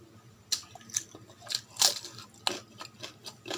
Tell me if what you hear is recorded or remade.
recorded